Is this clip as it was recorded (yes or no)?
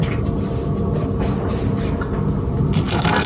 yes